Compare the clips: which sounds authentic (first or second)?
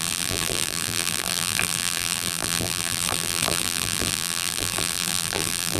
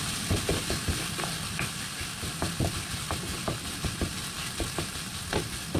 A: second